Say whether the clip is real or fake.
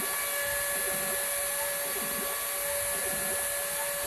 real